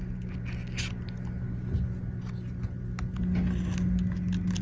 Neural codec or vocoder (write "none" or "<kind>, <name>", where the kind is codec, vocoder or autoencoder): none